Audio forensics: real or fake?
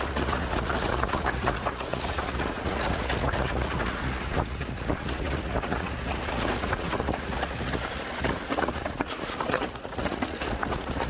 fake